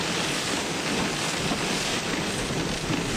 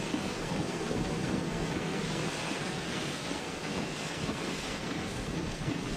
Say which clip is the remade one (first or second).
second